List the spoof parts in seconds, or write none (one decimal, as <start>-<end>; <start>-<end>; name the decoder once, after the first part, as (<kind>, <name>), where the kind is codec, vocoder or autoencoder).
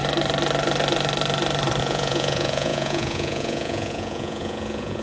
1.8-5.0 (vocoder, Vocos)